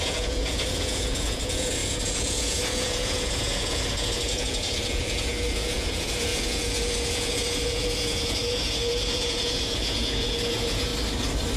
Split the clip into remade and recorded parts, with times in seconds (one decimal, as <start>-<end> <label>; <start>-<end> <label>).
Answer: 0.0-10.9 remade; 10.9-11.6 recorded